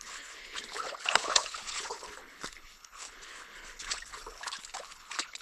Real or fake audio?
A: fake